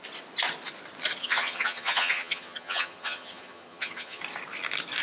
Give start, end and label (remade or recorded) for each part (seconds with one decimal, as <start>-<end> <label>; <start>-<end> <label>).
0.0-1.2 recorded; 1.2-4.2 remade; 4.2-5.0 recorded